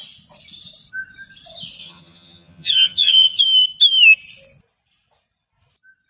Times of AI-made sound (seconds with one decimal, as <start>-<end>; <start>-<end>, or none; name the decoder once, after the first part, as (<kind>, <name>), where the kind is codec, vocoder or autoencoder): 1.8-3.4 (vocoder, HiFi-GAN)